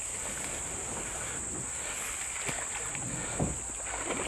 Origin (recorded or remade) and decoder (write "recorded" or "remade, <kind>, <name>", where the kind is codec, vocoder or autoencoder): recorded